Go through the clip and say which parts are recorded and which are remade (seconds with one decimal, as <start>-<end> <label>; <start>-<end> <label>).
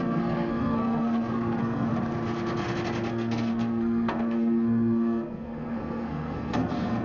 0.0-1.9 remade; 1.9-3.1 recorded; 3.1-7.0 remade